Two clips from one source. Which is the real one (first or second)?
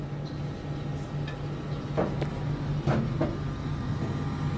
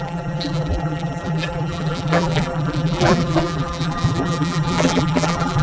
first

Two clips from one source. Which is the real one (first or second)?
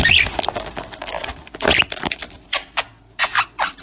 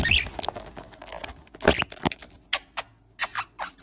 second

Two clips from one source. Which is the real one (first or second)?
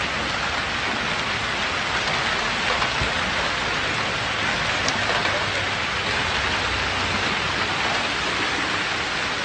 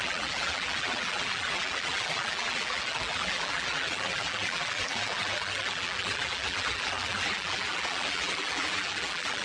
first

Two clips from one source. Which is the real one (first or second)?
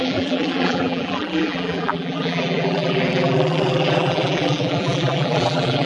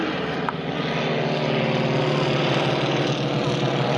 second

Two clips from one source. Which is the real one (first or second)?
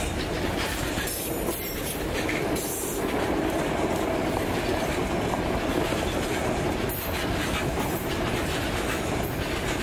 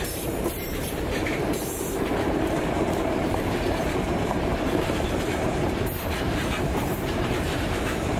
first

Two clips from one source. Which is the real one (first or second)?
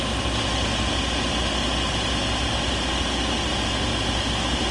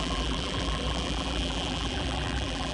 first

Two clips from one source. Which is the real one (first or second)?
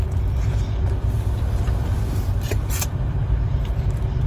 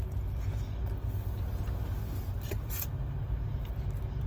second